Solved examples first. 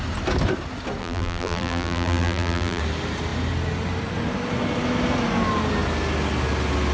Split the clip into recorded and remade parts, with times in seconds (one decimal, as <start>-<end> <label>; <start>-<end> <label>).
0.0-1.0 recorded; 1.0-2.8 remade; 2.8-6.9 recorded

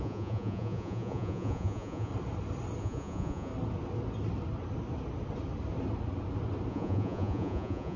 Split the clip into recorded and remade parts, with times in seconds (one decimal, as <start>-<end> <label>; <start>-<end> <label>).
0.0-2.1 remade; 2.1-2.8 recorded; 2.8-3.5 remade; 3.5-6.7 recorded; 6.7-8.0 remade

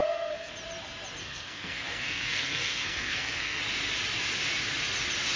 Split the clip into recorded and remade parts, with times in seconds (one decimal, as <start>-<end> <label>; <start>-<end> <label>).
0.0-0.5 remade; 0.5-1.2 recorded; 1.2-3.6 remade; 3.6-5.4 recorded